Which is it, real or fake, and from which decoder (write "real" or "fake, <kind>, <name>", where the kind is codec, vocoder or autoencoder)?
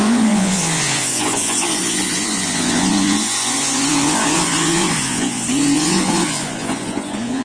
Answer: fake, vocoder, Vocos